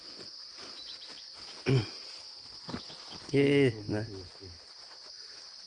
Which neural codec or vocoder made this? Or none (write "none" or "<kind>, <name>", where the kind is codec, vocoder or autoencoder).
none